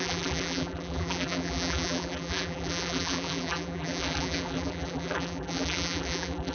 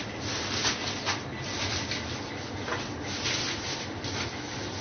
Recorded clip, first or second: second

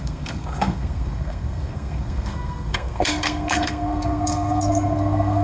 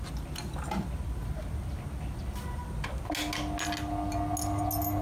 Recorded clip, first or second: second